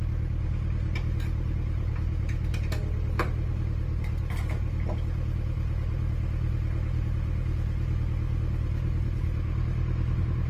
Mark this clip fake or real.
real